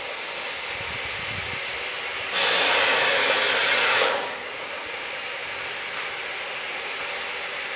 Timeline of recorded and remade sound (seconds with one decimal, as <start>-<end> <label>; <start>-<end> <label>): 0.0-3.6 recorded; 3.6-5.1 remade; 5.1-6.3 recorded; 6.3-6.9 remade; 6.9-7.8 recorded